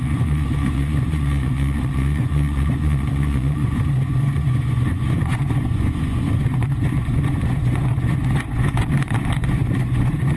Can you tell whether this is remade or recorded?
remade